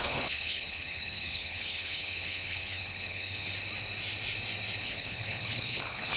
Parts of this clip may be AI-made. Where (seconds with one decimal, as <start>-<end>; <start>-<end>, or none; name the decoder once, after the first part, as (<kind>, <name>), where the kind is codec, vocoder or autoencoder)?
0.0-3.5 (codec, HILCodec); 4.8-6.2